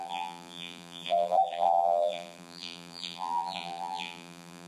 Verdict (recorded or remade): remade